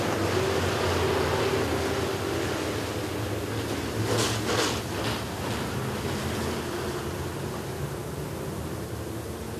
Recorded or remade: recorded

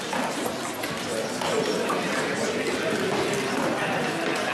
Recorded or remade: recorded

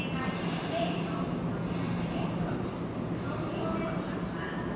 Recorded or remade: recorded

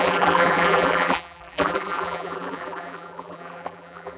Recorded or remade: remade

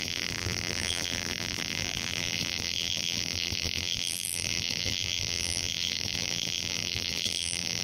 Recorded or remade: remade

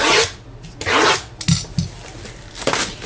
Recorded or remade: recorded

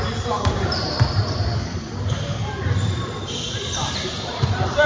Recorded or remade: remade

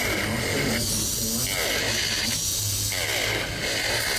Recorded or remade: recorded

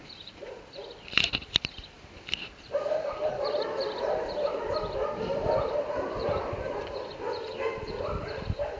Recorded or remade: remade